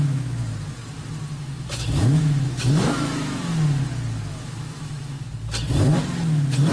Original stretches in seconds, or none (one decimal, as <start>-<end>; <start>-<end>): 0.4-1.4; 3.5-4.3; 5.3-6.7